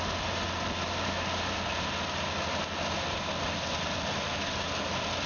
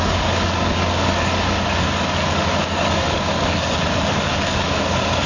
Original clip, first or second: first